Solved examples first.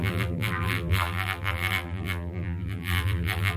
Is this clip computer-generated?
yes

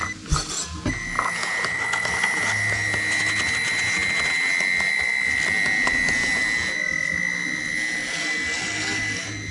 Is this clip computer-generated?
no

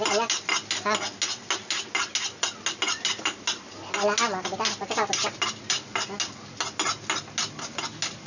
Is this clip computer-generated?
no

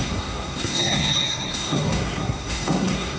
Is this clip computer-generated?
yes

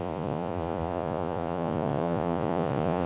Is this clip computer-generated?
yes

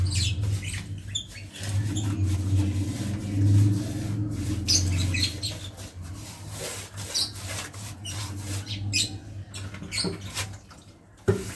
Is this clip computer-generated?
no